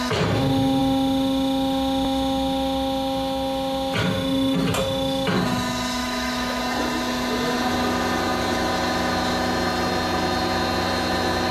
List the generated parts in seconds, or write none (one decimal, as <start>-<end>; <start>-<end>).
6.0-6.6